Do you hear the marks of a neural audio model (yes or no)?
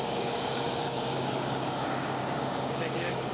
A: yes